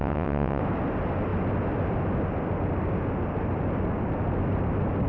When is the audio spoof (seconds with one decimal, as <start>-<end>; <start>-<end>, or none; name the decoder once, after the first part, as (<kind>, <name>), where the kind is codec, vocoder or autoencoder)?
0.0-0.6 (vocoder, WaveNeXt)